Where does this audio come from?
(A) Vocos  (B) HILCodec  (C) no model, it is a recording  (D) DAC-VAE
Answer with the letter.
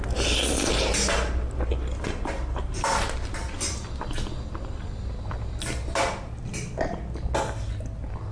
C